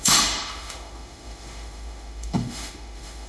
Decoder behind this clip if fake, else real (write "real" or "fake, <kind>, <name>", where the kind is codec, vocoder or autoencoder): fake, autoencoder, DAC-VAE